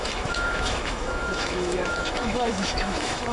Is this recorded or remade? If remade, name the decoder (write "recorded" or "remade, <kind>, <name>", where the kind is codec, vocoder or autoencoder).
remade, autoencoder, DAC-VAE